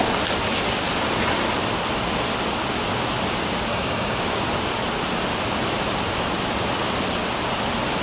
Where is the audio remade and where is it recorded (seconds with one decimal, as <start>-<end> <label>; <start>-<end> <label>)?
0.0-3.7 recorded; 3.7-4.2 remade; 4.2-8.0 recorded